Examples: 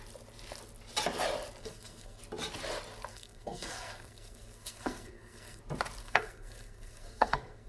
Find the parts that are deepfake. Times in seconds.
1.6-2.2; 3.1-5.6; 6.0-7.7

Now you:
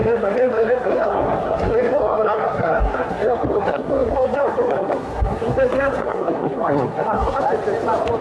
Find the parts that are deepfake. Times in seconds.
0.0-7.4

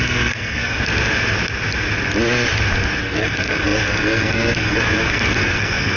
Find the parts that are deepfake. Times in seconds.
0.0-0.9; 3.0-6.0

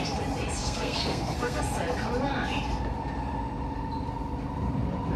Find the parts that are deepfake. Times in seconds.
0.6-1.6

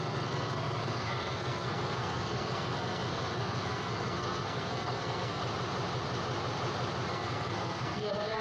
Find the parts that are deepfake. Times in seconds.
0.0-5.4; 7.1-8.4

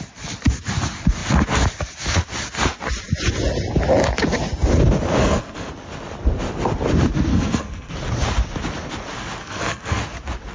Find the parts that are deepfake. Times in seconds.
5.2-5.7; 7.3-7.9; 9.4-10.0

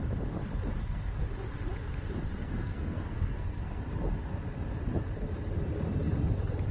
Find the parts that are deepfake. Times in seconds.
0.8-1.3; 2.4-3.8